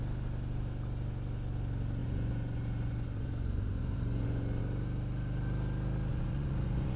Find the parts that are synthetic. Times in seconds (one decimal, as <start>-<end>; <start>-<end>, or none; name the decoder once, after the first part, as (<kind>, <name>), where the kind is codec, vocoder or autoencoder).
2.0-4.6 (vocoder, Vocos); 6.1-7.0